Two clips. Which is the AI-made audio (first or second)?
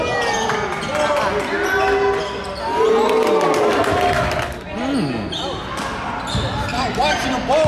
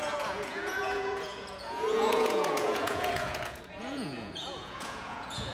second